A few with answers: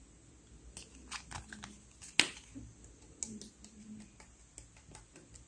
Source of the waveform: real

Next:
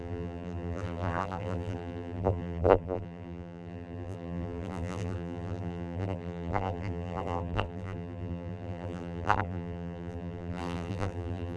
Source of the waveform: fake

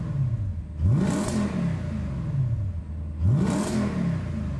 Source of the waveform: real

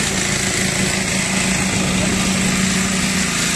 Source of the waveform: real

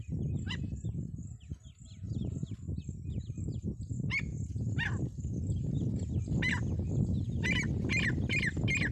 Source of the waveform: real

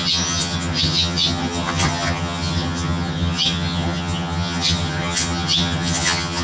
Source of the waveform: fake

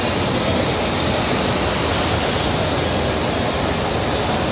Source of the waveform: real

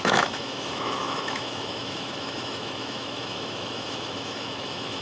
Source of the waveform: fake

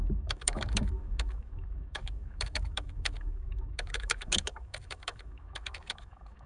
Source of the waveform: fake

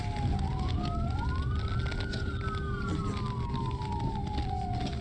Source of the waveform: real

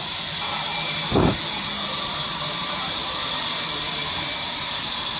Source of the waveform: fake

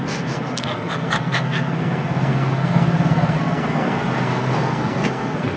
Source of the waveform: fake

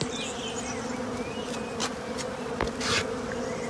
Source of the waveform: real